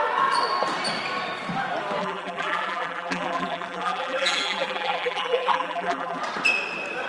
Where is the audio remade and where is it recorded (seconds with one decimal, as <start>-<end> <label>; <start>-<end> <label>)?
0.0-2.0 recorded; 2.0-6.2 remade; 6.2-7.1 recorded